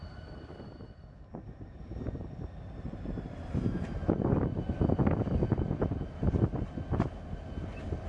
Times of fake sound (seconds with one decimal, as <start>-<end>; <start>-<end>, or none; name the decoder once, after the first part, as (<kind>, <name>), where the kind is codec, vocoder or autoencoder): 0.0-4.0 (vocoder, BigVGAN v2)